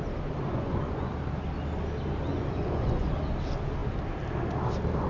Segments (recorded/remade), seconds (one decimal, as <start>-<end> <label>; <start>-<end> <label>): 0.0-0.5 recorded; 0.5-1.1 remade; 1.1-2.3 recorded; 2.3-3.1 remade; 3.1-5.1 recorded